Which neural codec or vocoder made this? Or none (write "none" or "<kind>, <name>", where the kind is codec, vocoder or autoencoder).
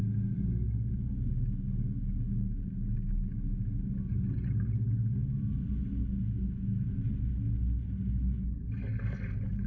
none